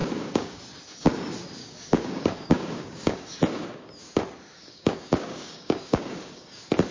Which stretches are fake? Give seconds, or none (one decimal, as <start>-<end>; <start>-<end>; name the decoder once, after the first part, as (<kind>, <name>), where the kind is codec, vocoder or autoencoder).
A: 0.0-0.6 (codec, DAC); 1.6-3.9; 4.6-6.5